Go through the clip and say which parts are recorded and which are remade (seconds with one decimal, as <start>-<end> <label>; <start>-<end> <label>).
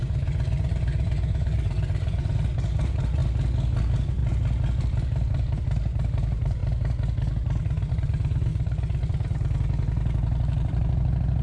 0.0-3.2 remade; 3.2-3.8 recorded; 3.8-4.2 remade; 4.2-4.8 recorded; 4.8-6.6 remade; 6.6-7.9 recorded; 7.9-8.5 remade; 8.5-9.0 recorded; 9.0-11.4 remade